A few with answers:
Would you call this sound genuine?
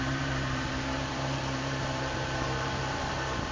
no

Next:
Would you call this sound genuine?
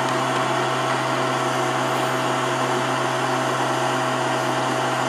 yes